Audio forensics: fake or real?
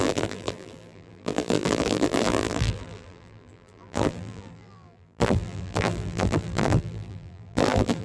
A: fake